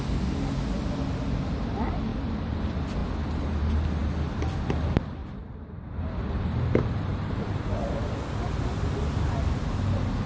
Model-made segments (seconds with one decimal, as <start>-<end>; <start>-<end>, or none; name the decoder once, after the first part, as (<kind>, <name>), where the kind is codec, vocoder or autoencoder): 2.1-2.6 (vocoder, BigVGAN v2); 5.2-7.4